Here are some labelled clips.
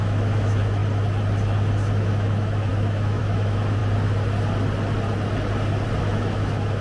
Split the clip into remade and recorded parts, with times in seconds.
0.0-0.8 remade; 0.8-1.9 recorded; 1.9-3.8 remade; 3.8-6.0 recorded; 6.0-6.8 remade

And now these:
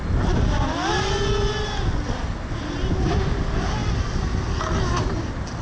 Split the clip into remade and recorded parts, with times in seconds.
0.0-5.6 recorded